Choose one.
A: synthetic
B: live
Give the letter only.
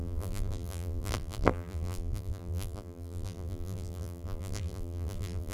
A